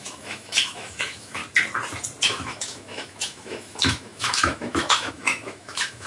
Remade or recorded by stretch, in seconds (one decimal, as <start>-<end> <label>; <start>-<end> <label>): 0.0-1.4 remade; 1.4-2.2 recorded; 2.2-6.1 remade